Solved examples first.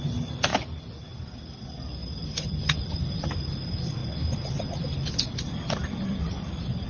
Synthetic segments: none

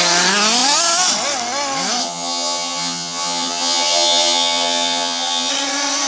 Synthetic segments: 2.0-5.5

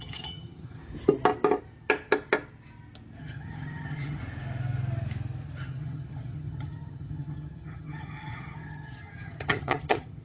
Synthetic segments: 0.0-0.8; 3.2-4.2; 5.6-10.2

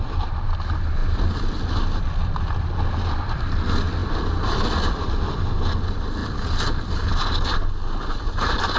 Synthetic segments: none